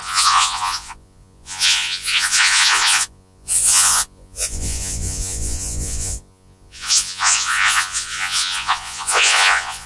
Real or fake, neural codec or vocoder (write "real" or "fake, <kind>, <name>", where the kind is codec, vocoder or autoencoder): fake, vocoder, Vocos